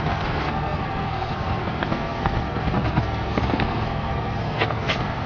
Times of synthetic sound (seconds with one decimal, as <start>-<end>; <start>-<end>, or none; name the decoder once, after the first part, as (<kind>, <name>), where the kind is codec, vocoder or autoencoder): 0.0-5.3 (codec, SNAC)